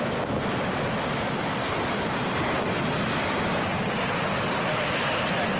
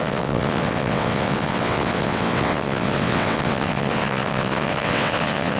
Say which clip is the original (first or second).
first